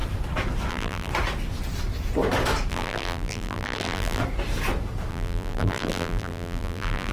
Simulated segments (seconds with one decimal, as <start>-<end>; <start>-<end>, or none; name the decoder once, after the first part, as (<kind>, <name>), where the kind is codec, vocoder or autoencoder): 0.7-1.1 (vocoder, BigVGAN v2); 2.7-4.2; 5.1-7.1